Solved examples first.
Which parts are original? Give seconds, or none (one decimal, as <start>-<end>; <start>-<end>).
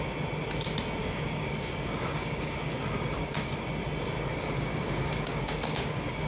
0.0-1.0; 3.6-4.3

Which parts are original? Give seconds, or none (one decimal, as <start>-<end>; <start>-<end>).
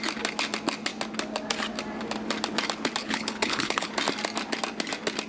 0.0-3.0; 3.9-5.3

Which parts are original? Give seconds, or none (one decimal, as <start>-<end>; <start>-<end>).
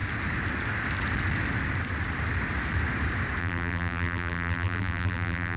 0.0-3.4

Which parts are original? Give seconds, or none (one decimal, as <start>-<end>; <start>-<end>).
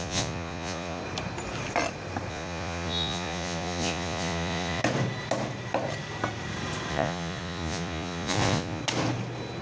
1.0-2.3; 4.8-6.9; 8.8-9.6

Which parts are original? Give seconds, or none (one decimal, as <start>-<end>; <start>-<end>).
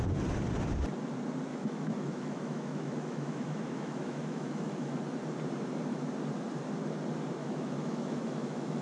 0.0-1.5; 5.0-7.4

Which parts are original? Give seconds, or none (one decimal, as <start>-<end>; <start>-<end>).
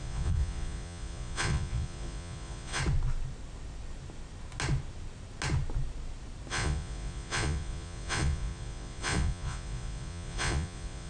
2.8-6.5